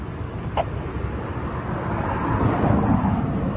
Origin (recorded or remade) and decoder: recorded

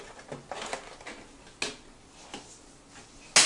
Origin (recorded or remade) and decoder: recorded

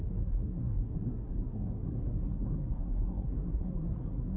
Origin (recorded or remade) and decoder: remade, codec, SNAC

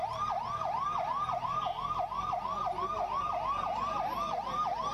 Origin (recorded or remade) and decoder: recorded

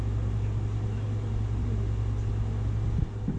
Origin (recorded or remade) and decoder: recorded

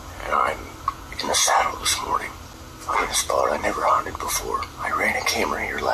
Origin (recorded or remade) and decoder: recorded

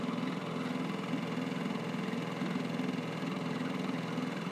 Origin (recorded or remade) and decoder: recorded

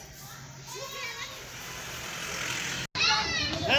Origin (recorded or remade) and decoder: recorded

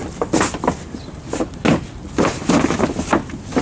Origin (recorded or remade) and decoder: recorded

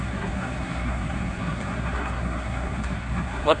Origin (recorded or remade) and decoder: remade, codec, SNAC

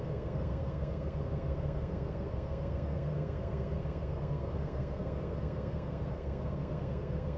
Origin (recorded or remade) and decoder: remade, codec, SNAC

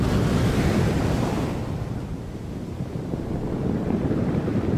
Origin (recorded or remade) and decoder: recorded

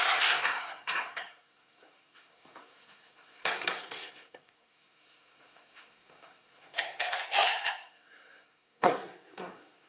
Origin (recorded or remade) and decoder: remade, codec, SNAC